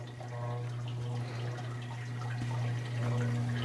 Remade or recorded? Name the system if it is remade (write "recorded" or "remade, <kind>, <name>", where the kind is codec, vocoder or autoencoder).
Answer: recorded